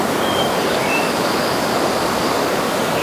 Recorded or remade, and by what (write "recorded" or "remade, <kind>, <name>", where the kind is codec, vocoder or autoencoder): remade, codec, DAC